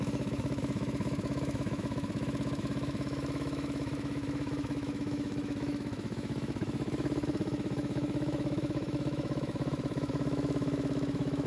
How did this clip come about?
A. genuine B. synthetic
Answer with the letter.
B